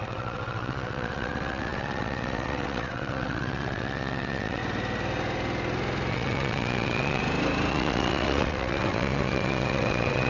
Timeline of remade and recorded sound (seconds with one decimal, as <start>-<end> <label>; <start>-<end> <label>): 0.0-4.6 remade; 4.6-6.1 recorded; 6.1-7.2 remade; 7.2-7.7 recorded; 7.7-10.3 remade